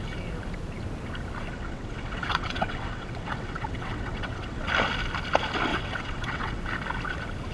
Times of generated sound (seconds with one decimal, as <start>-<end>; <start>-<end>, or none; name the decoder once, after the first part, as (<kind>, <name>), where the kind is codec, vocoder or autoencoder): 1.5-4.7 (vocoder, WaveNeXt); 5.7-6.6